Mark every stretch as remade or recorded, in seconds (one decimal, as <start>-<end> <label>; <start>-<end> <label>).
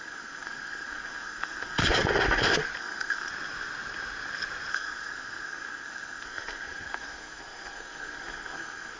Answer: 0.0-1.8 remade; 1.8-2.8 recorded; 2.8-3.3 remade; 3.3-4.7 recorded; 4.7-9.0 remade